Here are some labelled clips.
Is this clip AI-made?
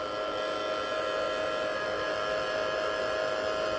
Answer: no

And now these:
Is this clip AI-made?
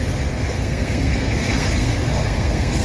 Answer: yes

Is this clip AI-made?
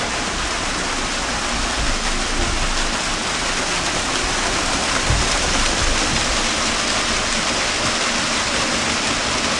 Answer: no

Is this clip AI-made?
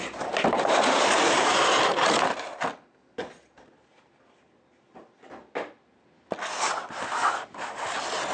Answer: no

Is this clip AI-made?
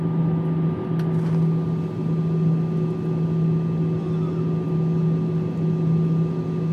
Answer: no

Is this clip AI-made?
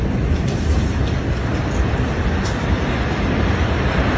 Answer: no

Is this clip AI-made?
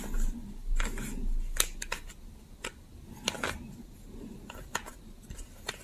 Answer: no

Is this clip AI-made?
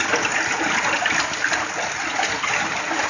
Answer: no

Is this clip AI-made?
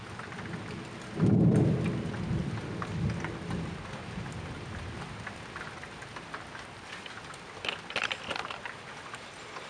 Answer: no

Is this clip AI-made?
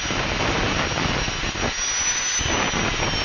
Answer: no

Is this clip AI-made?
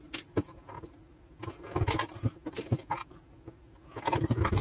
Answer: no